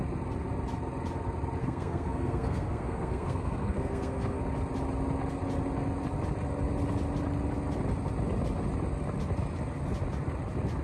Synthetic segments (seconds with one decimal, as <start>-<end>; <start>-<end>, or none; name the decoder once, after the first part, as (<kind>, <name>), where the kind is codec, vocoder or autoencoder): 1.6-4.4 (codec, SNAC)